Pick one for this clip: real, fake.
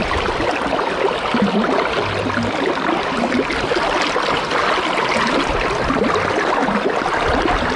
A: real